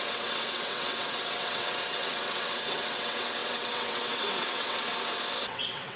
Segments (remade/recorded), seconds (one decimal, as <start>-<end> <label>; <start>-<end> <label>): 0.0-4.9 remade; 4.9-5.4 recorded; 5.4-6.0 remade